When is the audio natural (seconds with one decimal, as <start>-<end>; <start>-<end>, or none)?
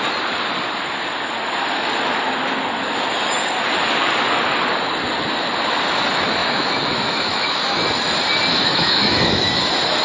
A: 0.0-6.4; 7.8-8.5; 9.6-10.0